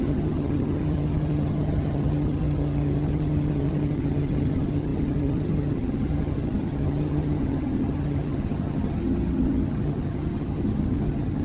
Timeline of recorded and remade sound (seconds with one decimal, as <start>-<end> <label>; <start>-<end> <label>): 0.0-11.4 remade